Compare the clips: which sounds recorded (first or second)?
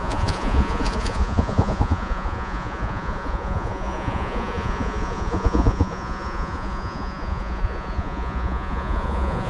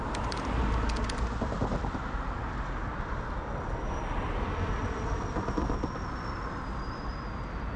second